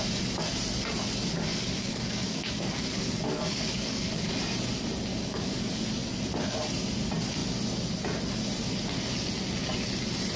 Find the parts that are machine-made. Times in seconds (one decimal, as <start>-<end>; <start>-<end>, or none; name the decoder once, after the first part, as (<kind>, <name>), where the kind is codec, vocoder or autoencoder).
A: 1.5-4.4 (codec, DAC); 5.1-5.6